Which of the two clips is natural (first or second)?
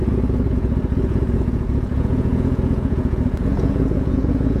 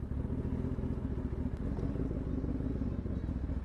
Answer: second